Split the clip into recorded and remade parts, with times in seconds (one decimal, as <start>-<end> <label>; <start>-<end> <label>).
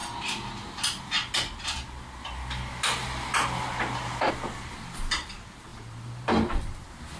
0.0-5.7 recorded; 5.7-6.7 remade; 6.7-7.2 recorded